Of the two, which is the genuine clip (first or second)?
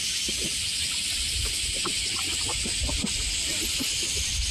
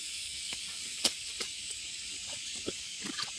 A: first